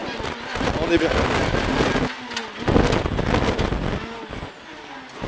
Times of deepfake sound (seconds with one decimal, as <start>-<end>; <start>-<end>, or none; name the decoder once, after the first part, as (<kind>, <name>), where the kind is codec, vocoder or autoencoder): none